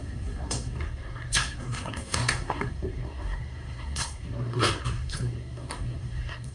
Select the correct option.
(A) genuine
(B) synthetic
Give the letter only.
B